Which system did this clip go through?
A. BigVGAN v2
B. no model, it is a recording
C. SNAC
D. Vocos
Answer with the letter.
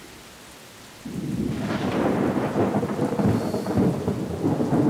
B